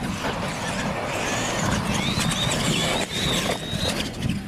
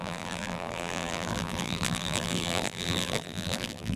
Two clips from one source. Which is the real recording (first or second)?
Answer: first